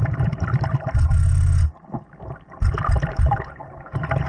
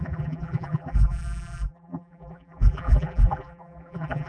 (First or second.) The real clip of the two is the first